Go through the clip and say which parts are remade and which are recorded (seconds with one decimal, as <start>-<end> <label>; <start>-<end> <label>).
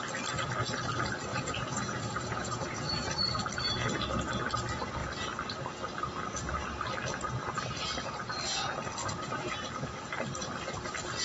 0.0-1.3 recorded; 1.3-3.1 remade; 3.1-11.2 recorded